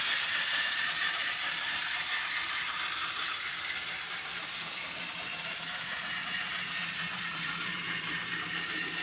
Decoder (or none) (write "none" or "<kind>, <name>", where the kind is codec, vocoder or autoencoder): vocoder, BigVGAN v2